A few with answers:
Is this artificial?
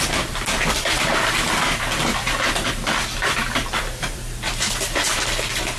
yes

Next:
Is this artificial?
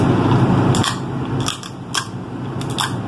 no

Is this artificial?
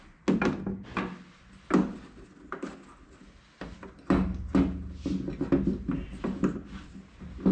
no